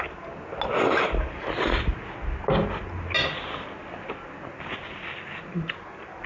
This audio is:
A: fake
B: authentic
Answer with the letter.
B